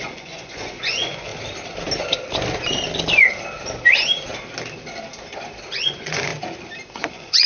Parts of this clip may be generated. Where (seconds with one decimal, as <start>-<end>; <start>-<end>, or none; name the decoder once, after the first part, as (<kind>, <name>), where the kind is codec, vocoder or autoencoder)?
0.0-1.3 (vocoder, Vocos); 5.8-6.3; 6.9-7.5